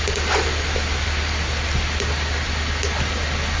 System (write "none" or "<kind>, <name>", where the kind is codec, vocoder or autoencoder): none